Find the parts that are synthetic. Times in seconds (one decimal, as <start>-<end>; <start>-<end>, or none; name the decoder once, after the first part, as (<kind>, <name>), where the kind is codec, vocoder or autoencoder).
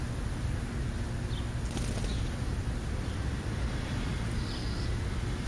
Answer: 2.1-4.1 (vocoder, BigVGAN v2)